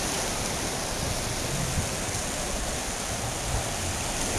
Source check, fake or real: real